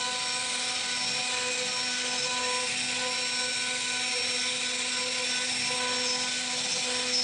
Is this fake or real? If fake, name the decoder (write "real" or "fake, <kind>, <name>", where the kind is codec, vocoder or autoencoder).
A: real